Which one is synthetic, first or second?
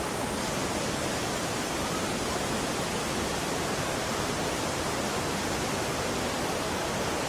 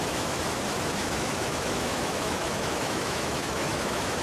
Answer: second